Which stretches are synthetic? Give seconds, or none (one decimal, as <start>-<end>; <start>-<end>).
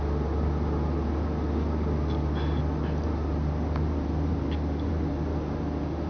none